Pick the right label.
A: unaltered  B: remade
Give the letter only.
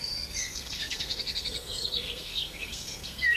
B